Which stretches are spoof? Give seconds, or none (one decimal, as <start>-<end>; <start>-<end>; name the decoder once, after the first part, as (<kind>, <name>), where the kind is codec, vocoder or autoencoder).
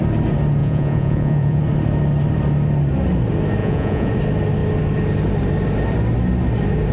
0.6-1.6 (vocoder, Vocos); 3.6-4.1